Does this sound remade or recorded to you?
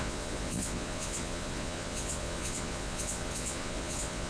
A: remade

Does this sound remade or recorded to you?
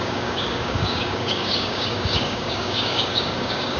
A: remade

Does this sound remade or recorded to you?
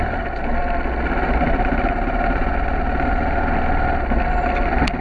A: recorded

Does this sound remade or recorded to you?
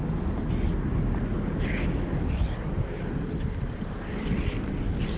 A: recorded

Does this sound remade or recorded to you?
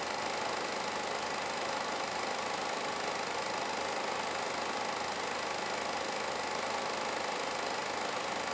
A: recorded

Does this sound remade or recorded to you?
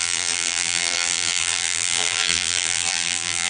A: remade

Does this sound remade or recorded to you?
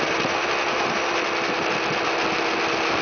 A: recorded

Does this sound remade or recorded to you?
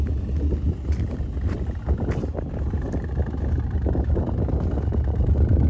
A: recorded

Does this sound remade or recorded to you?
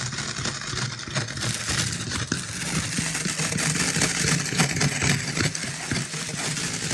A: recorded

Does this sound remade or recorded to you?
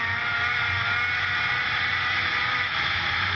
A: recorded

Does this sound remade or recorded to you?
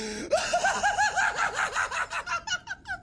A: recorded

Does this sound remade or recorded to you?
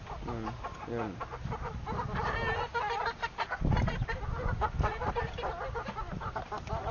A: recorded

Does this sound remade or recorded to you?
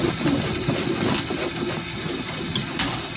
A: recorded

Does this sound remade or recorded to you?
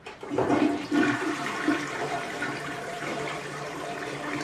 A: remade